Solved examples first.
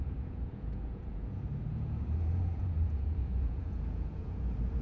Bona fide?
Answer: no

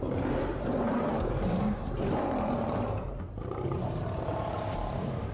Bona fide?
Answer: no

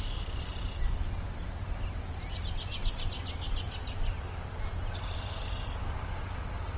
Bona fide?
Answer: yes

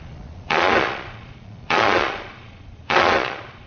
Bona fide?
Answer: no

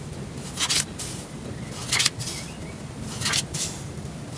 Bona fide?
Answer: yes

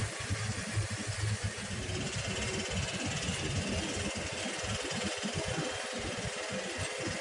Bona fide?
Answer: yes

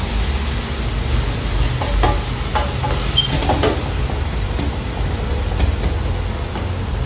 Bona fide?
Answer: yes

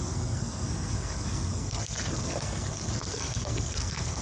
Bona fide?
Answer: no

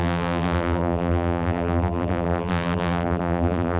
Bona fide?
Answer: no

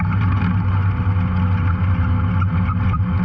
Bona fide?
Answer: yes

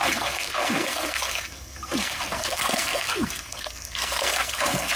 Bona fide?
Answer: no